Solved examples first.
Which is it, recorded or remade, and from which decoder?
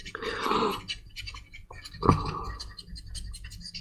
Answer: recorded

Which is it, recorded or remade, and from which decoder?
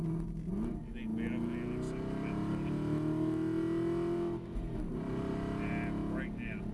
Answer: recorded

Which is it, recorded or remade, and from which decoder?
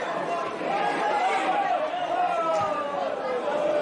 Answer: remade, vocoder, BigVGAN v2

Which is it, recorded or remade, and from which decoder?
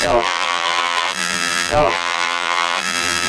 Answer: remade, vocoder, BigVGAN v2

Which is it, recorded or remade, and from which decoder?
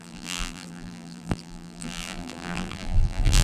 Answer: remade, vocoder, BigVGAN v2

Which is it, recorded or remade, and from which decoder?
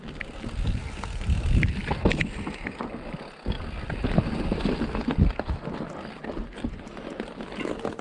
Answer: recorded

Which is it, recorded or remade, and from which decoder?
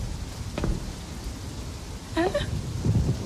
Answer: recorded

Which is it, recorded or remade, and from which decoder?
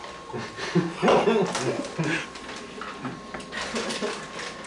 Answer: recorded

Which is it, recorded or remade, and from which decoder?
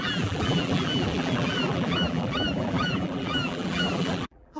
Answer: remade, vocoder, BigVGAN v2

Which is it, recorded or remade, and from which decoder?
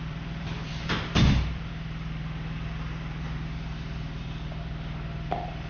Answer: remade, vocoder, BigVGAN v2